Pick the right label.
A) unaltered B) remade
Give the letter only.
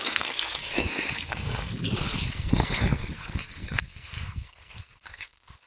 B